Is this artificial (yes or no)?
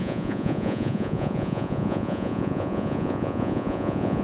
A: yes